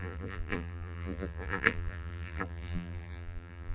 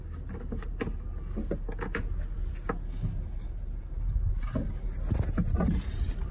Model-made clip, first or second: first